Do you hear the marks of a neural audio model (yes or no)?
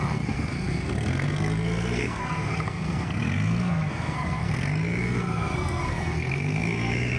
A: yes